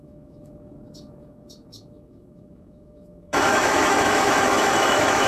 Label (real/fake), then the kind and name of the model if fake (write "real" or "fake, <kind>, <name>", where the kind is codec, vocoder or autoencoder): fake, autoencoder, DAC-VAE